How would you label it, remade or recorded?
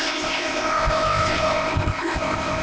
remade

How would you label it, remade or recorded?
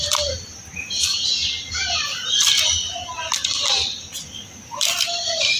recorded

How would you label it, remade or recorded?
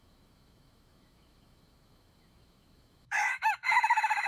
remade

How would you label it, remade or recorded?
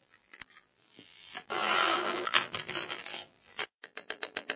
remade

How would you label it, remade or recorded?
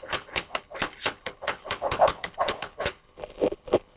remade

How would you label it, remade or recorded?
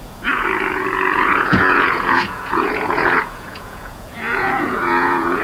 remade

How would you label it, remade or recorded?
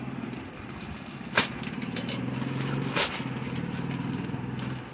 recorded